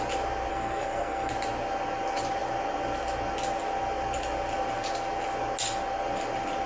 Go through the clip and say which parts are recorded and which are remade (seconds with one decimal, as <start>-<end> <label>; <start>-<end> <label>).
0.0-0.5 recorded; 0.5-1.3 remade; 1.3-6.7 recorded

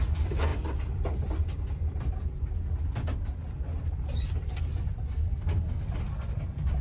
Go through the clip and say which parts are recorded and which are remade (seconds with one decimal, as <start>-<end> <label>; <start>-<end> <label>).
0.0-5.1 recorded; 5.1-5.8 remade; 5.8-6.8 recorded

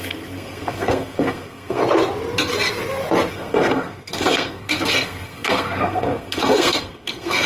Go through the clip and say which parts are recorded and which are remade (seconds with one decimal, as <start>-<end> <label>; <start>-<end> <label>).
0.0-1.8 remade; 1.8-3.3 recorded; 3.3-7.5 remade

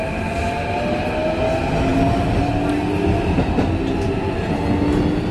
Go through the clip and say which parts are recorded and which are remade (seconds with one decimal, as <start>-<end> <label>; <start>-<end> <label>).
0.0-5.3 recorded

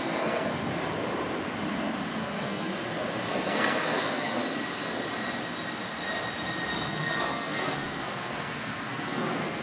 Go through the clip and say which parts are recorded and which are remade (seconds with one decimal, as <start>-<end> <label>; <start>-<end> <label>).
0.0-0.7 remade; 0.7-2.2 recorded; 2.2-2.7 remade; 2.7-3.3 recorded; 3.3-4.4 remade; 4.4-6.7 recorded; 6.7-9.6 remade